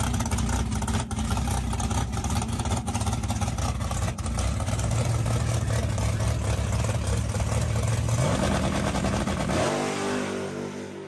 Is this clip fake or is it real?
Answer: real